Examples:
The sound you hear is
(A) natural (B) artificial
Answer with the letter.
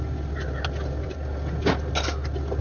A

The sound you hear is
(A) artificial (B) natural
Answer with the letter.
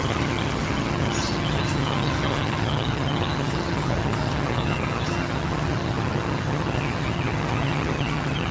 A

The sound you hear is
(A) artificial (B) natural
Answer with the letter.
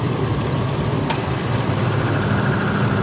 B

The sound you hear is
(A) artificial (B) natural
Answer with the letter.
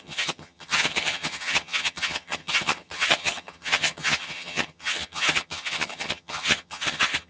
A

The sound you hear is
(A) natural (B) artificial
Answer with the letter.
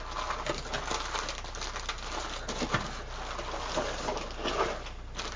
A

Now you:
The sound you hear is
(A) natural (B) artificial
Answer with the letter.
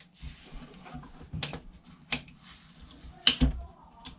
A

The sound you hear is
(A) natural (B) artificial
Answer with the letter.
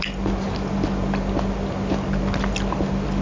A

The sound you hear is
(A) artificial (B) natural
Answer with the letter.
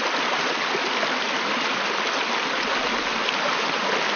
B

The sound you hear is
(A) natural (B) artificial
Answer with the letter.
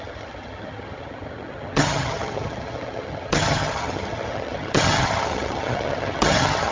B